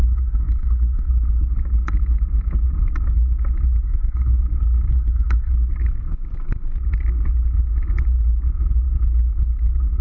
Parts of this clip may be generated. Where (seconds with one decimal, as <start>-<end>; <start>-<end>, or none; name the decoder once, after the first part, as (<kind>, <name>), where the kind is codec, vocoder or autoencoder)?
0.0-1.1 (codec, SNAC); 3.8-4.4; 4.9-5.5